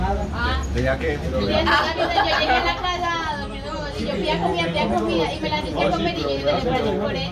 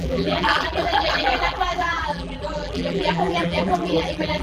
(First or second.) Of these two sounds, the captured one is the first